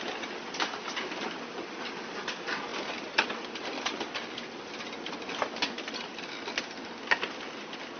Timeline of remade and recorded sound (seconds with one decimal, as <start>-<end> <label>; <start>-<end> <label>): 0.0-8.0 recorded